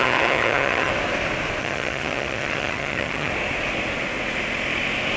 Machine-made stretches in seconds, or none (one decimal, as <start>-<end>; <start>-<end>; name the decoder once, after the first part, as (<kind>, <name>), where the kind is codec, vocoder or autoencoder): 0.0-0.9 (vocoder, HiFi-GAN); 1.6-3.3